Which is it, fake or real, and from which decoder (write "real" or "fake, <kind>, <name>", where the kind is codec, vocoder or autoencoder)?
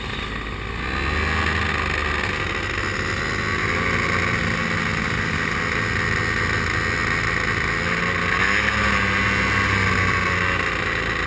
real